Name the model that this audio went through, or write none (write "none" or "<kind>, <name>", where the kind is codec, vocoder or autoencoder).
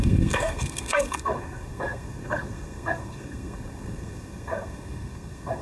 codec, SNAC